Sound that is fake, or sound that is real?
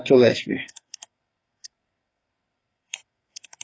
fake